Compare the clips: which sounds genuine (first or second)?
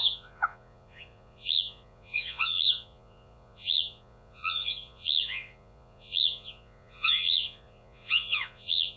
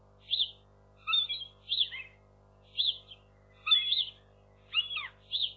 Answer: second